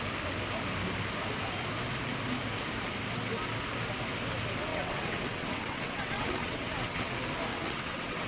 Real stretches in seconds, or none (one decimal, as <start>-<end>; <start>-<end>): 0.0-4.7; 7.1-7.5